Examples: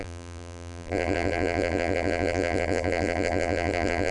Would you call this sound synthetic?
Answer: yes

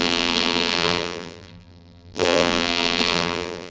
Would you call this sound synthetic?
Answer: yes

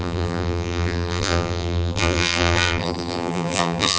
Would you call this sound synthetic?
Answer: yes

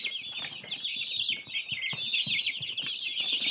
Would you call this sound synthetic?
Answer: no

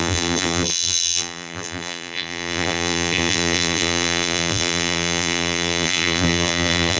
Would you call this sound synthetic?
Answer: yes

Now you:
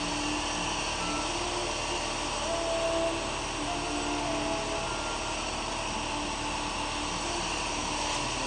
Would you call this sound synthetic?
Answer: no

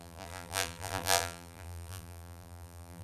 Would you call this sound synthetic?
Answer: yes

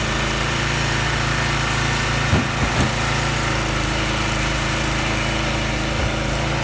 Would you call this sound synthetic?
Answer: yes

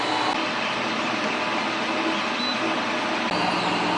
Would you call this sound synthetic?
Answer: no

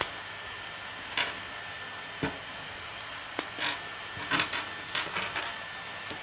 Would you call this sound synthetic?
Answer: no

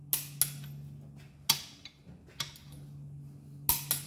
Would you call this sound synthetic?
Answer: no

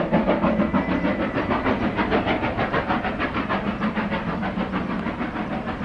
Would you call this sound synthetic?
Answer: no